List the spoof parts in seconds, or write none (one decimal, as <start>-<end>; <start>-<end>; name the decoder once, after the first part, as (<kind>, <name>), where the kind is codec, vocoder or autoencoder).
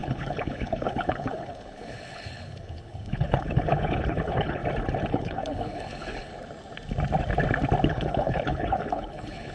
0.0-4.6 (codec, HILCodec); 5.1-6.3; 7.9-9.5